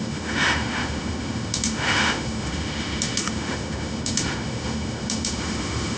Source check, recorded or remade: remade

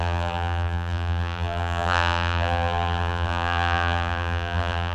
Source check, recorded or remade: remade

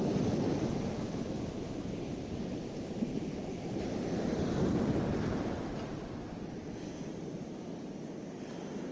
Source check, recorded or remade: recorded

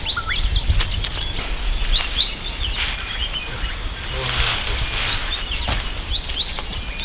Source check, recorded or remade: recorded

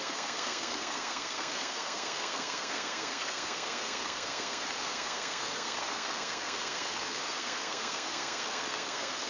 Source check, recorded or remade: remade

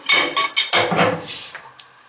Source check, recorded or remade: recorded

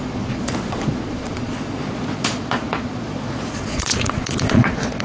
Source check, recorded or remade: remade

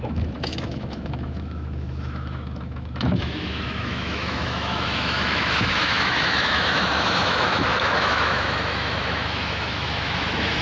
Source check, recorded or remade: remade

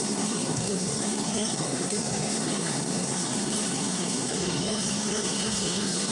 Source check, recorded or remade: remade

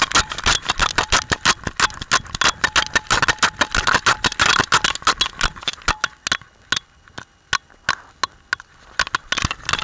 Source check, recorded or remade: recorded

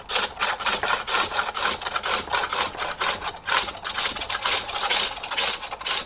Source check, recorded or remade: recorded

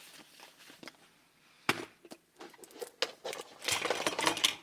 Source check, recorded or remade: recorded